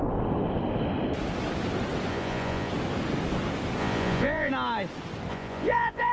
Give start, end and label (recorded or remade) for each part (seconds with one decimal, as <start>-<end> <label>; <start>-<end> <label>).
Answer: 0.0-2.1 recorded; 2.1-2.7 remade; 2.7-3.8 recorded; 3.8-4.5 remade; 4.5-5.3 recorded; 5.3-6.1 remade

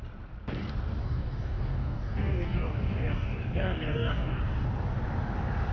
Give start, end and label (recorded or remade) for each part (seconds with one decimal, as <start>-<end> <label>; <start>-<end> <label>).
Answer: 0.0-1.0 recorded; 1.0-4.4 remade; 4.4-5.7 recorded

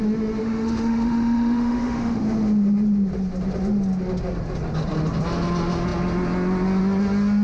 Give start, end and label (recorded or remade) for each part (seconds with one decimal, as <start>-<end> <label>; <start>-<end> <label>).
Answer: 0.0-0.4 recorded; 0.4-2.2 remade; 2.2-7.4 recorded

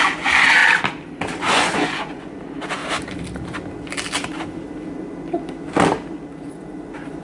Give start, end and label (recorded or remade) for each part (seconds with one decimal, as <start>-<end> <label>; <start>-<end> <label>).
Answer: 0.0-0.6 remade; 0.6-1.5 recorded; 1.5-2.8 remade; 2.8-6.5 recorded; 6.5-7.2 remade

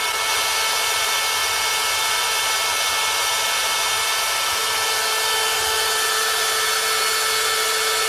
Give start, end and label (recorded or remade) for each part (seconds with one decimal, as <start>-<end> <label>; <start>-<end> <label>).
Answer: 0.0-8.1 recorded

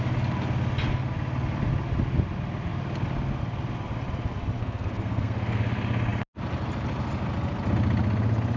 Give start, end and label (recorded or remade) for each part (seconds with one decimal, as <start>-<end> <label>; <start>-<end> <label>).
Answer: 0.0-4.6 recorded; 4.6-5.6 remade; 5.6-8.6 recorded

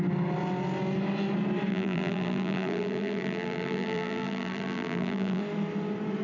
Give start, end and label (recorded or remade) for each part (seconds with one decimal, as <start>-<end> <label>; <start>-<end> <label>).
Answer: 0.0-1.7 recorded; 1.7-5.4 remade; 5.4-6.2 recorded

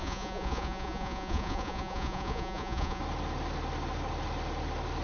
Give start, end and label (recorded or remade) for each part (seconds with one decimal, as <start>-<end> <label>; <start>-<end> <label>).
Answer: 0.0-3.0 remade; 3.0-5.0 recorded